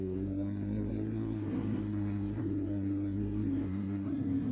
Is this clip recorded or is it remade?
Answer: remade